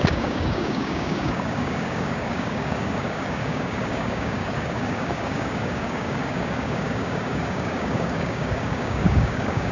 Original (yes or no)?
no